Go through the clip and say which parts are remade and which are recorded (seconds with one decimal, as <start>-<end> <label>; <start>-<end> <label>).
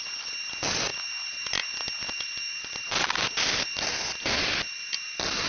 0.0-5.5 recorded